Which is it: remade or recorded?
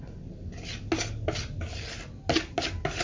recorded